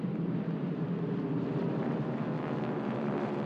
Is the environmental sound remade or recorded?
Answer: recorded